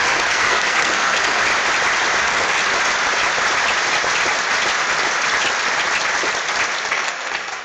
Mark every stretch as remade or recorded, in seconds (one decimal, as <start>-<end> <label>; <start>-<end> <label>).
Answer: 0.0-1.5 remade; 1.5-2.2 recorded; 2.2-2.6 remade; 2.6-6.9 recorded; 6.9-7.6 remade